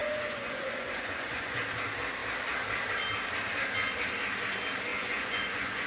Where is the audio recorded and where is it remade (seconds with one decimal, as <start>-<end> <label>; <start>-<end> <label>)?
0.0-1.6 remade; 1.6-4.9 recorded; 4.9-5.9 remade